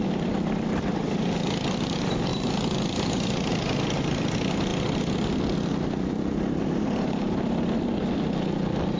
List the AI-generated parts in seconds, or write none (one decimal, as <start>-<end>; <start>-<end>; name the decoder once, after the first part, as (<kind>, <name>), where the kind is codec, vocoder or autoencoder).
0.0-2.3 (vocoder, BigVGAN v2); 3.5-9.0